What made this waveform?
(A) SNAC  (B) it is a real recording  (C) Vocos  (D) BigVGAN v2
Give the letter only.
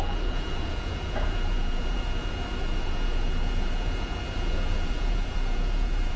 C